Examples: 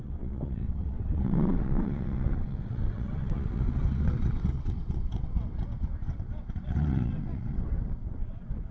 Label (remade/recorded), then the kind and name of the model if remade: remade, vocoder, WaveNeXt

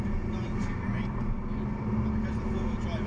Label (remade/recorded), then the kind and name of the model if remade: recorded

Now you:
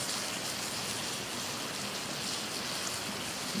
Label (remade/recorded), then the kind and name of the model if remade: recorded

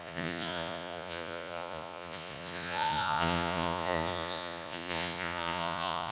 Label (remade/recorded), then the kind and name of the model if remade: remade, vocoder, Vocos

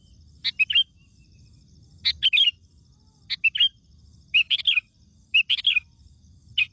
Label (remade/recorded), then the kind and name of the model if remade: recorded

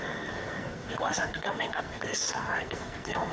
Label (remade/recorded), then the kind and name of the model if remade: remade, codec, SNAC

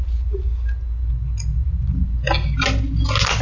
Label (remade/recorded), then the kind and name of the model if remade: recorded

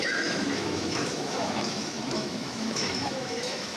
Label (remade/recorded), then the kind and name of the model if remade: remade, autoencoder, DAC-VAE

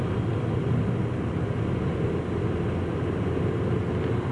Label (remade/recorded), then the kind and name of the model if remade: recorded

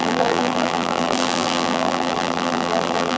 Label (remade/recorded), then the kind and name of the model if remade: remade, vocoder, BigVGAN v2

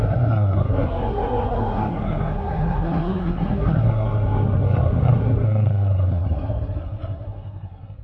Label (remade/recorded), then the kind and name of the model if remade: remade, codec, SNAC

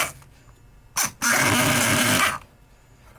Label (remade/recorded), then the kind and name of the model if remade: recorded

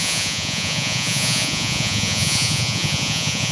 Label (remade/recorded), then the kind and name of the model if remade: remade, vocoder, Vocos